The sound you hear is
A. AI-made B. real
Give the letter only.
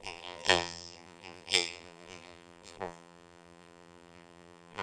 A